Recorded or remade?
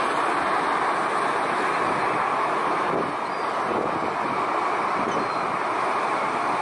recorded